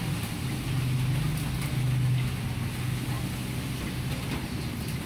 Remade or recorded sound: recorded